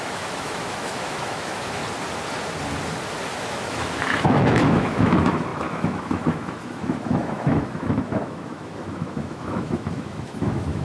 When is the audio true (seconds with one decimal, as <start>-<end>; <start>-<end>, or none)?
1.8-3.4